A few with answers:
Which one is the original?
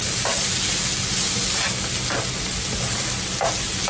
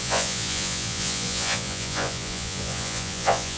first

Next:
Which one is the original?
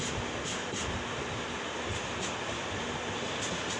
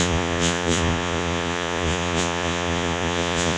first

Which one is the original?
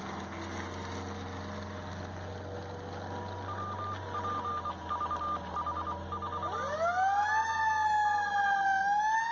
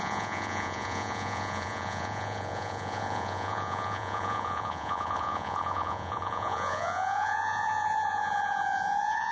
first